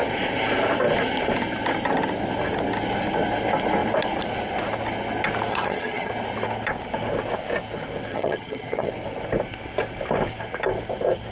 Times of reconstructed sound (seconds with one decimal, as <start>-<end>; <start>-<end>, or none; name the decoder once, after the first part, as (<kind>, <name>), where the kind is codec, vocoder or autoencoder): 5.5-6.1 (vocoder, HiFi-GAN); 8.1-8.9